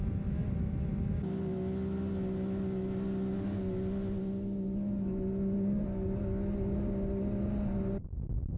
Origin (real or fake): real